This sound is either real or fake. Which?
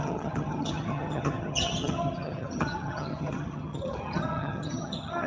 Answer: fake